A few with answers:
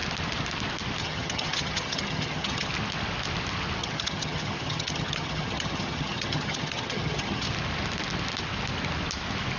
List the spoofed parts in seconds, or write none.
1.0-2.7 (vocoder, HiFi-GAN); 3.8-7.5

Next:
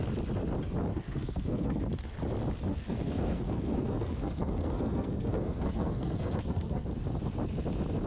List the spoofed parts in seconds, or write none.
0.9-1.8 (codec, SNAC); 2.7-6.9

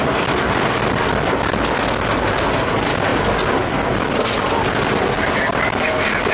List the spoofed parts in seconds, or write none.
none

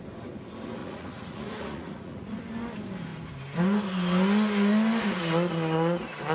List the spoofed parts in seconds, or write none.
0.8-2.4 (vocoder, Vocos)